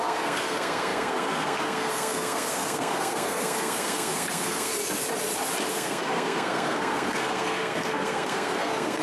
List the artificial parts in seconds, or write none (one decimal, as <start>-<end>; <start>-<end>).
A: 0.0-4.7; 5.7-9.0